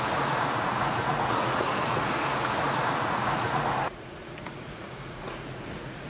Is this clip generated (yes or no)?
yes